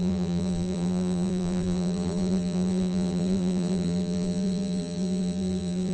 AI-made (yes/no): yes